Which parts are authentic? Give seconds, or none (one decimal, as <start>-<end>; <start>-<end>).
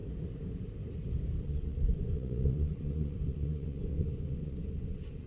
0.0-1.4